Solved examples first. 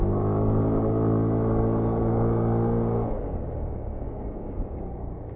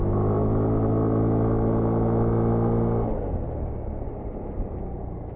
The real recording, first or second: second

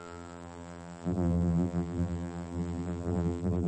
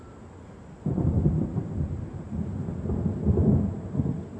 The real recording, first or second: second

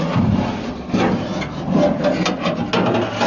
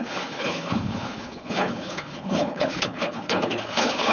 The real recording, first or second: first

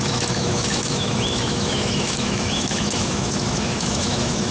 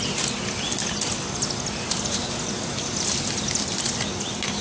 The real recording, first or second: second